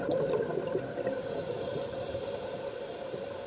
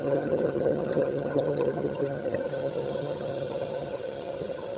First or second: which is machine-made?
second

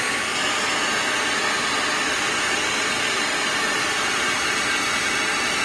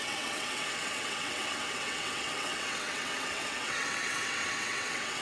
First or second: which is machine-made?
second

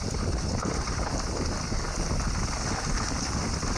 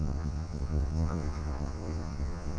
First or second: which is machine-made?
second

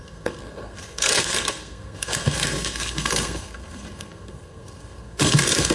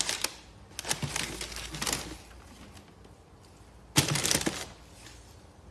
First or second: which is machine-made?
first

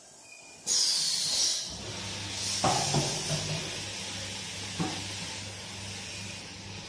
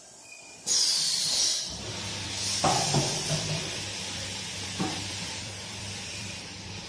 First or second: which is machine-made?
second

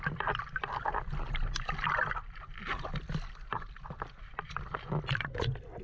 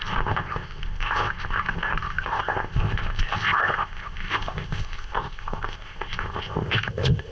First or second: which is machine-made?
second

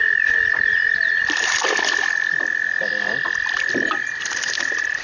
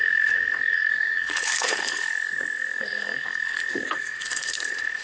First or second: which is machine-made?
second